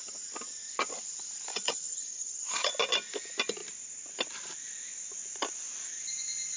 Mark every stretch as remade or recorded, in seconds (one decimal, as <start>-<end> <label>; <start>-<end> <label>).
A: 0.0-1.5 recorded; 1.5-2.7 remade; 2.7-6.6 recorded